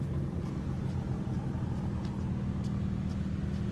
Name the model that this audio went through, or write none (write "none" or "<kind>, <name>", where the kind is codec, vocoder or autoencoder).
none